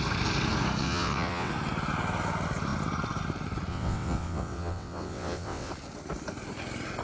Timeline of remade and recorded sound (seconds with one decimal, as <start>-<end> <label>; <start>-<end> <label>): 0.0-0.8 recorded; 0.8-1.5 remade; 1.5-3.7 recorded; 3.7-5.7 remade; 5.7-7.0 recorded